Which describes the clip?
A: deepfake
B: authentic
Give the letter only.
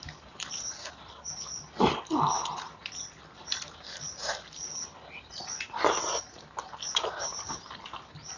B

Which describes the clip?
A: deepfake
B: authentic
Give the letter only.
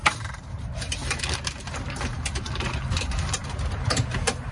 A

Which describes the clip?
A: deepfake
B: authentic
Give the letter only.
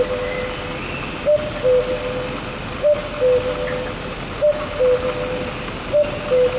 B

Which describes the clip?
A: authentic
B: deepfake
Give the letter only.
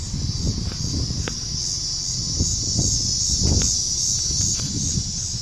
A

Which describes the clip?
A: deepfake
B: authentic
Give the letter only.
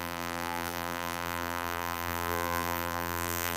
A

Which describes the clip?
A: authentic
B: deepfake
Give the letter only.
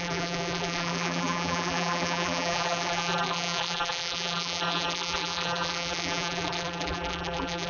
B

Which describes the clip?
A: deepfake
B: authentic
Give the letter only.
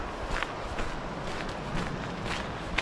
B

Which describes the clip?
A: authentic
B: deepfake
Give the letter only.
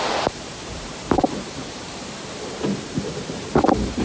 B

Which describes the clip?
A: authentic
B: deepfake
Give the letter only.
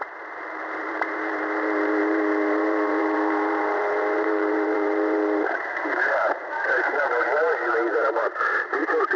B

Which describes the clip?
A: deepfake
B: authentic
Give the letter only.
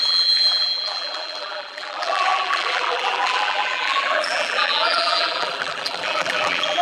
A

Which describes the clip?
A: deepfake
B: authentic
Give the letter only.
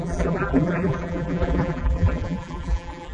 A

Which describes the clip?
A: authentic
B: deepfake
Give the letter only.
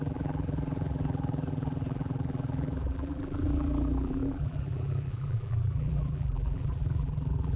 B